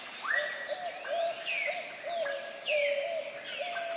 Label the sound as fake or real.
real